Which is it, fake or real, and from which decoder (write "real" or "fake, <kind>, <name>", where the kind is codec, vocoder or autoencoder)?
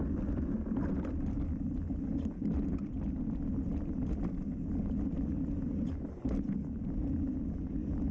real